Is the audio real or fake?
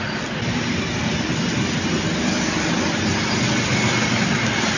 real